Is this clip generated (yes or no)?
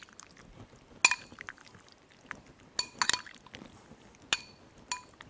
no